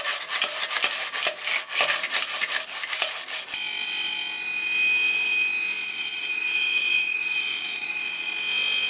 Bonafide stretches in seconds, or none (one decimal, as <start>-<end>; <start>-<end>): 0.0-5.8; 8.3-8.9